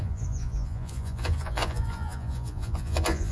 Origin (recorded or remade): remade